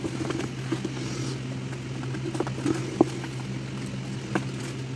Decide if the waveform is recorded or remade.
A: recorded